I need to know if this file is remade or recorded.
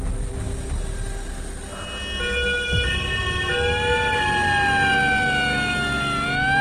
recorded